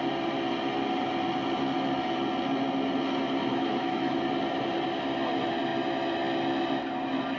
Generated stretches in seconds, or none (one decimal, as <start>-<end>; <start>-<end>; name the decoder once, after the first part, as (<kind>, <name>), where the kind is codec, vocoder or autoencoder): 3.5-4.2 (autoencoder, DAC-VAE)